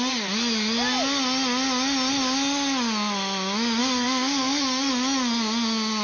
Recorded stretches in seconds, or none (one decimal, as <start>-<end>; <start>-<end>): 0.0-3.8; 4.9-6.0